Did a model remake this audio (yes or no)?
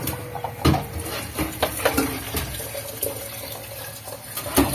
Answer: no